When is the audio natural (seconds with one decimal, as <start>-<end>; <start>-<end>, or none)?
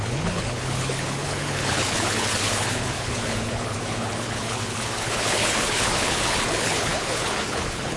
none